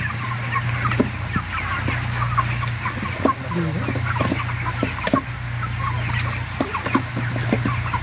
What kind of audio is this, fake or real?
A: real